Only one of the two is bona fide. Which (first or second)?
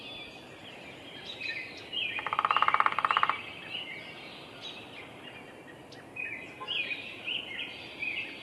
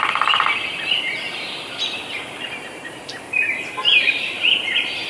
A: first